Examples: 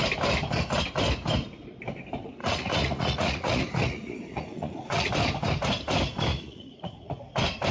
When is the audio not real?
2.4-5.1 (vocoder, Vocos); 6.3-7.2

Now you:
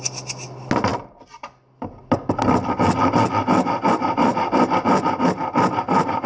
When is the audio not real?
none

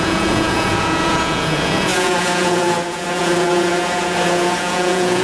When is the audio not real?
0.0-5.2 (vocoder, Vocos)